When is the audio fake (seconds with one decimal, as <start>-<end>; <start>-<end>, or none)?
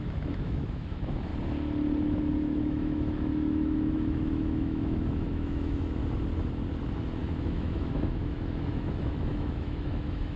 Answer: 0.0-1.3; 2.2-6.0; 7.2-10.4